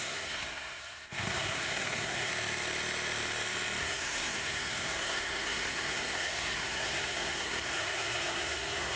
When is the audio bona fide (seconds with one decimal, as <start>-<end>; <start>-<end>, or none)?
2.3-3.8